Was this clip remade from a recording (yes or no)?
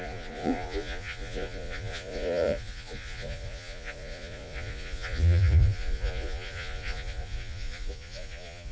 yes